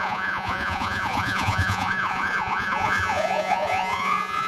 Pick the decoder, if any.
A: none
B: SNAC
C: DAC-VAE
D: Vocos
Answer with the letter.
D